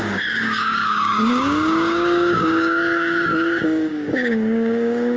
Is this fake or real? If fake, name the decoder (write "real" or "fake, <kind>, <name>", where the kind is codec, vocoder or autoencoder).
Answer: fake, codec, DAC